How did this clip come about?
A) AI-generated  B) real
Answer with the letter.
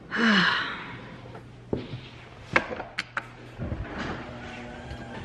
B